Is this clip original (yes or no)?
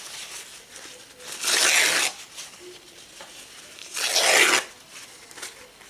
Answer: yes